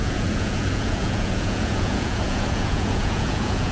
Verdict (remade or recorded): remade